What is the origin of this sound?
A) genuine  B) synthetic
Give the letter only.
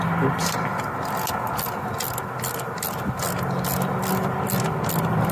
A